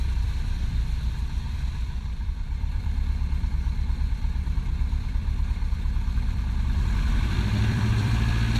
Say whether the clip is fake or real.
fake